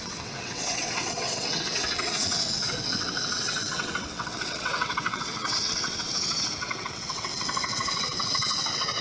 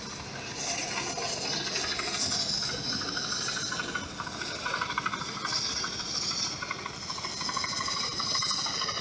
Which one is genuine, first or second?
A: second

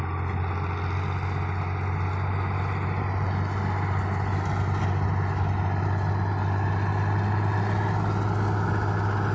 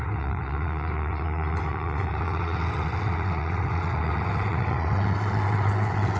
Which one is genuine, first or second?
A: first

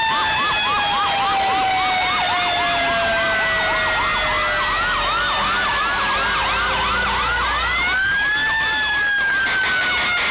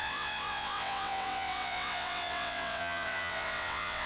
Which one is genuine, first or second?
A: first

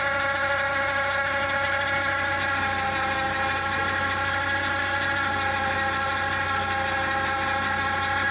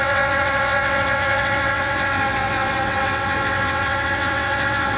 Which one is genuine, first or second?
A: first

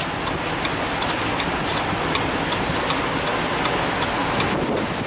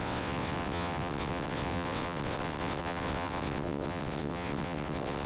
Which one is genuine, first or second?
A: first